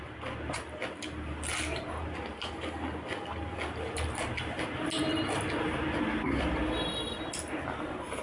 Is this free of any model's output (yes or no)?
yes